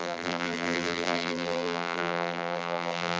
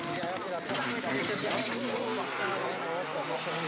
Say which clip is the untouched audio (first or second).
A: second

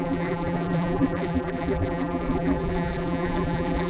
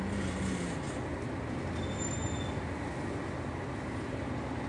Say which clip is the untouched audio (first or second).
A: second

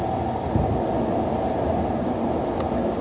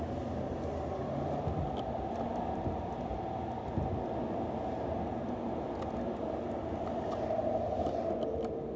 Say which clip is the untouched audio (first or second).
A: second